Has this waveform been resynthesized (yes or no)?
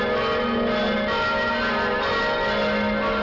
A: no